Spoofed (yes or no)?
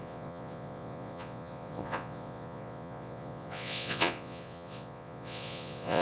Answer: yes